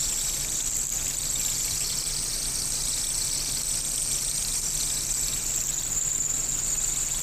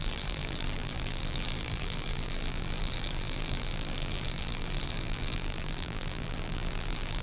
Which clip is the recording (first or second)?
first